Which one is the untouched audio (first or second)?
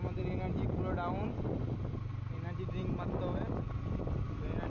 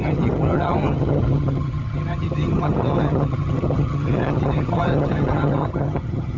first